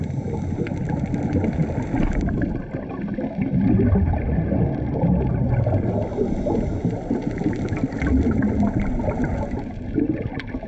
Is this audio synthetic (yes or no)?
no